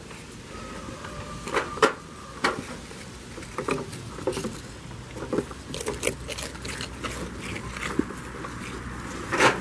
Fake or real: real